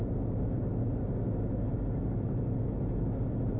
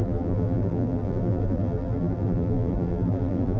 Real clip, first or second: first